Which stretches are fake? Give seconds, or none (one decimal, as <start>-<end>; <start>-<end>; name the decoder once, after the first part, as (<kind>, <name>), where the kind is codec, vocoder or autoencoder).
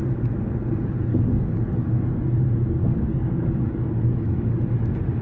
1.1-2.4 (codec, DAC); 2.8-4.6